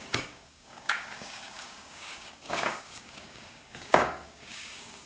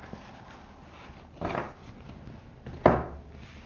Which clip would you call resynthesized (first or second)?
first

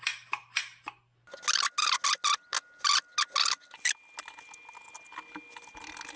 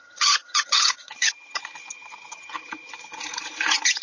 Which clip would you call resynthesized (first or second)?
second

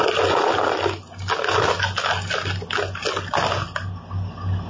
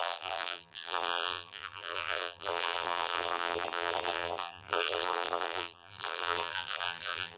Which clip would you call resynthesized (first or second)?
second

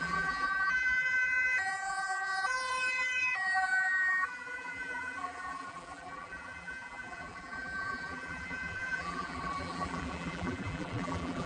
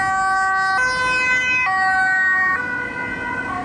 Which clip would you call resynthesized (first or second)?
first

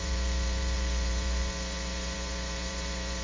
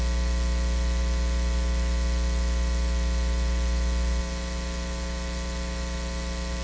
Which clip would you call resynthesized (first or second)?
first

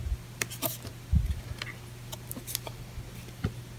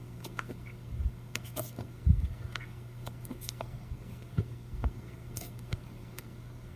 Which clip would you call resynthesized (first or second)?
second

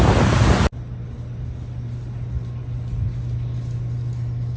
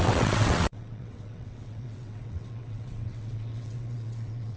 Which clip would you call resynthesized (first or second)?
second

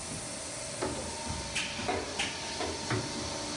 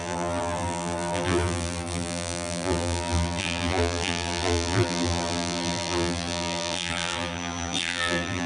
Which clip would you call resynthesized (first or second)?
second